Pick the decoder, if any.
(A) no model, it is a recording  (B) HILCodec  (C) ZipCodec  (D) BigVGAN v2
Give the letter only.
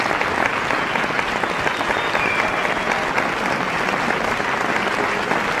A